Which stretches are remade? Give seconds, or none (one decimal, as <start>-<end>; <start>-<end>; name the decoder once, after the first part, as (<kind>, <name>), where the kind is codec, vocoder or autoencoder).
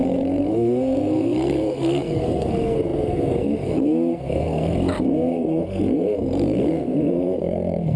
0.0-8.0 (codec, SNAC)